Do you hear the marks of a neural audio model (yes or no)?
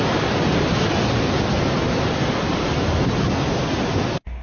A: no